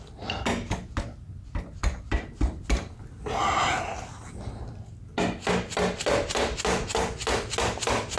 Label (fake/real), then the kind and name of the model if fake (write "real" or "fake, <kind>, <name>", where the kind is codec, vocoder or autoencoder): real